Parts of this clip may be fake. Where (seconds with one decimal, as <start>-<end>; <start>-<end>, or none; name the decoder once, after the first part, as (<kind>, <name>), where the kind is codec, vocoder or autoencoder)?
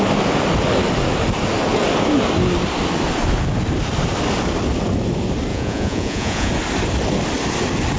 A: 5.5-6.5 (vocoder, Vocos)